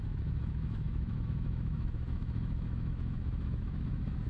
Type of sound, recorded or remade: remade